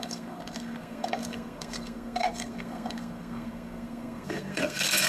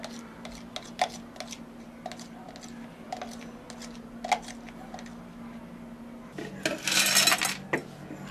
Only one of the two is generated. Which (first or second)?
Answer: first